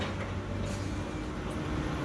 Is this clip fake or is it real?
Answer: real